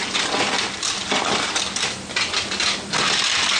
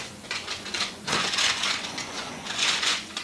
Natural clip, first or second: first